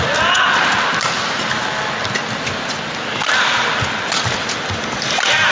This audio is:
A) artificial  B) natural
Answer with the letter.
B